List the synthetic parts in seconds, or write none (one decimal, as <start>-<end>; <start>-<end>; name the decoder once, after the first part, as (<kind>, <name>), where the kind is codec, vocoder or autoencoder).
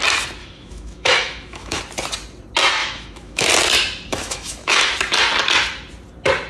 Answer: 0.4-1.8 (autoencoder, DAC-VAE); 2.8-3.5; 4.1-4.9